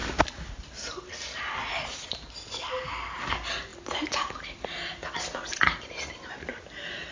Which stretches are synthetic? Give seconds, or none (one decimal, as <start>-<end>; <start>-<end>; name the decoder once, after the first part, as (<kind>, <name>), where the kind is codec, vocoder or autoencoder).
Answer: none